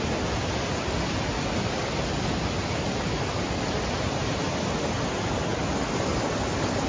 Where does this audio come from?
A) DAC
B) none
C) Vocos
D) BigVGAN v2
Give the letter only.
B